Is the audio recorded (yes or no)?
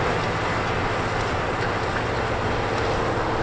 yes